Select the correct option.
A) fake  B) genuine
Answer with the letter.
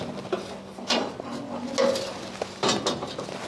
B